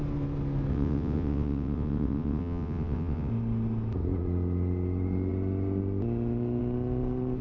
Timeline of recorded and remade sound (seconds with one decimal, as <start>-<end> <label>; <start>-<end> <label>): 0.0-0.7 recorded; 0.7-3.3 remade; 3.3-7.4 recorded